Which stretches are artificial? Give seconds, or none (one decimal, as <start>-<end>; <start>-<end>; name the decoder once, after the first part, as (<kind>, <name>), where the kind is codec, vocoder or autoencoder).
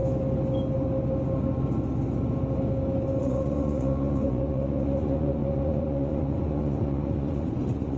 3.2-8.0 (vocoder, Vocos)